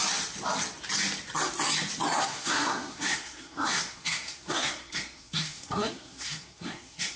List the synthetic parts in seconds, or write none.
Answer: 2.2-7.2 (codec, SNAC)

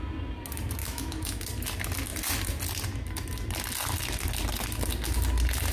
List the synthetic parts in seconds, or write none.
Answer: 0.8-1.4 (autoencoder, DAC-VAE)

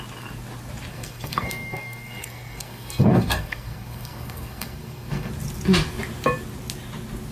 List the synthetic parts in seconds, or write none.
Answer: 0.9-5.3 (codec, SNAC)